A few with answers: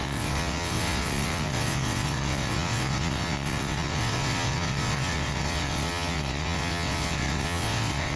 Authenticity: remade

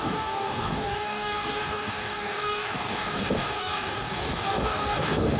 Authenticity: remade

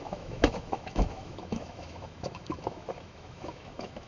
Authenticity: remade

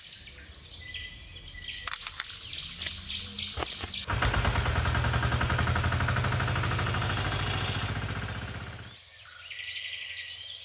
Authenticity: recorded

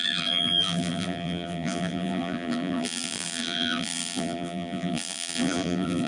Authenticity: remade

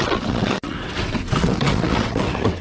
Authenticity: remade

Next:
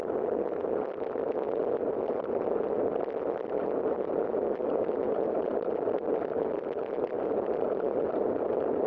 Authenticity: recorded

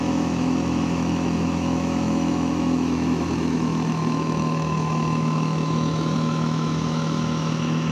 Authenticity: remade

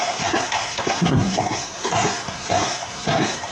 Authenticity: remade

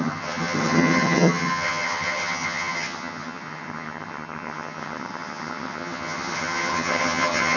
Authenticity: remade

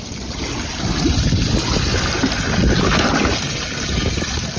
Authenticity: recorded